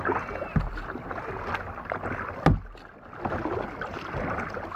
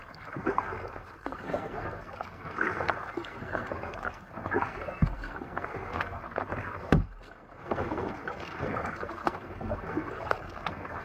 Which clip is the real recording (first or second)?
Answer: first